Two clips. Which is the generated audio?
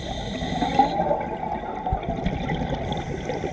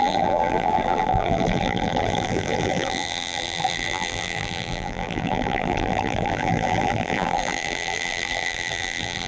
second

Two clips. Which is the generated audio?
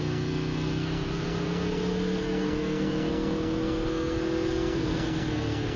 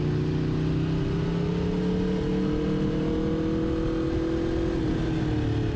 first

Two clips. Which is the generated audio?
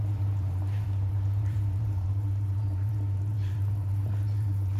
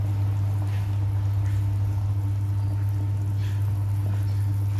first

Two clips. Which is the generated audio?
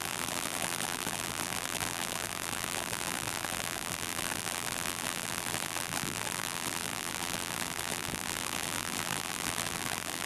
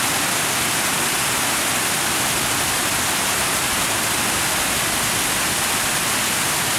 first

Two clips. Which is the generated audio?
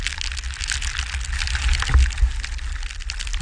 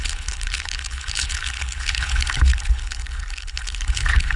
second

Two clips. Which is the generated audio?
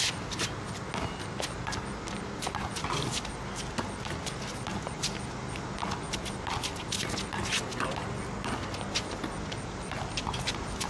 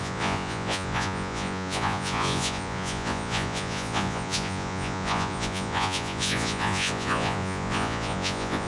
second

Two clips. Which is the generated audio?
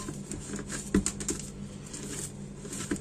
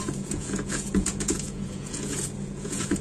second